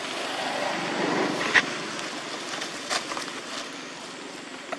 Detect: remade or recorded recorded